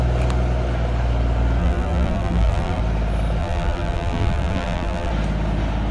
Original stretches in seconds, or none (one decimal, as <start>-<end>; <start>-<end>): 0.0-1.6; 2.8-3.4; 5.1-5.9